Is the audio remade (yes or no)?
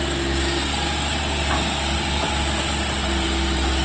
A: no